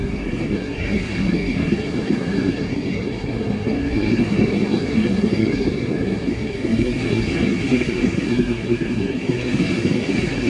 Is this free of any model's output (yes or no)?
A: no